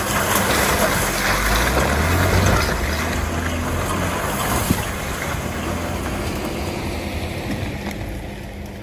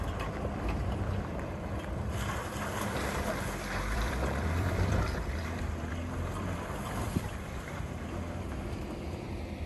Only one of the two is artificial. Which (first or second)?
second